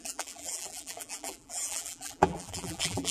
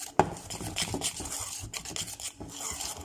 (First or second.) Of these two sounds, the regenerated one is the first